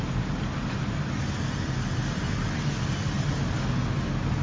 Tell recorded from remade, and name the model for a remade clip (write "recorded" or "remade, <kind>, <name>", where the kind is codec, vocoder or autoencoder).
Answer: recorded